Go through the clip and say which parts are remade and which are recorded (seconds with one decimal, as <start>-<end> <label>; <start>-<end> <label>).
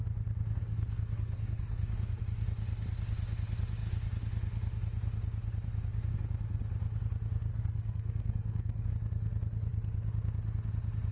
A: 0.0-0.6 recorded; 0.6-2.2 remade; 2.2-7.5 recorded; 7.5-8.9 remade; 8.9-11.1 recorded